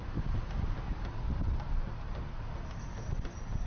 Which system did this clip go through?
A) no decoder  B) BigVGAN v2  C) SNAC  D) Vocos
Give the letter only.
A